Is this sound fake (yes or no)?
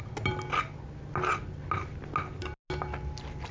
no